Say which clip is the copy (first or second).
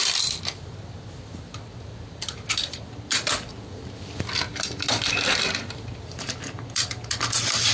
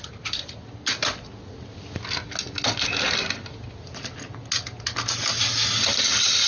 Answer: first